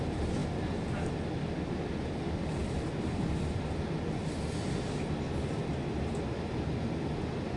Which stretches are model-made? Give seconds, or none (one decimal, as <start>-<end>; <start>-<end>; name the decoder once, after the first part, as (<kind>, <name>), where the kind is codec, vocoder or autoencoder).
none

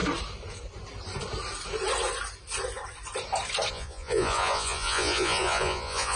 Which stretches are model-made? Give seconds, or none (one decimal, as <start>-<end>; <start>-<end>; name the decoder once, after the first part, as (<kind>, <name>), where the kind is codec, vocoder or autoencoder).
3.7-6.2 (vocoder, Vocos)